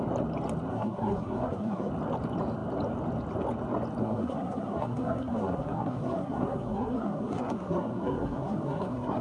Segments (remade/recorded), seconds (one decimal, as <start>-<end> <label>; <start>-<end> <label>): 0.0-0.7 recorded; 0.7-1.9 remade; 1.9-4.0 recorded; 4.0-9.2 remade